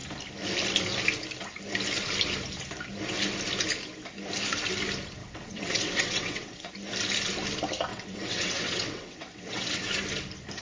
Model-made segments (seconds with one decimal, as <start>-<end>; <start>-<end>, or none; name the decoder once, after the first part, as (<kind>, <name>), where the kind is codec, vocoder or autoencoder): 5.2-6.7 (vocoder, WaveNeXt); 7.9-9.9